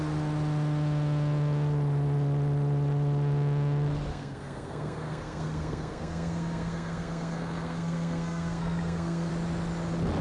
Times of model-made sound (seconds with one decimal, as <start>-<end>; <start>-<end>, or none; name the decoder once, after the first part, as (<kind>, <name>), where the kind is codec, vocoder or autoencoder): 4.1-9.3 (codec, SNAC)